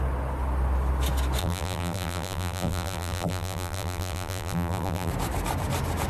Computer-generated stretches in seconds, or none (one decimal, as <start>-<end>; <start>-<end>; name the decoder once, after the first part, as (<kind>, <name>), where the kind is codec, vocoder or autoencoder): 1.4-5.1 (vocoder, BigVGAN v2)

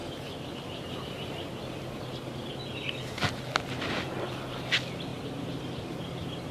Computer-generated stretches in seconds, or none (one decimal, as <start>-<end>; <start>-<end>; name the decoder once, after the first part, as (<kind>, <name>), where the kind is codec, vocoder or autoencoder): none